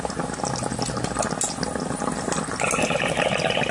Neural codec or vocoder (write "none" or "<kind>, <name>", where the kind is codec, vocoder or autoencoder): none